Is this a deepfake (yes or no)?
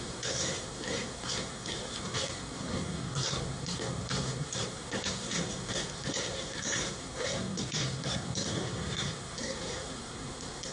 yes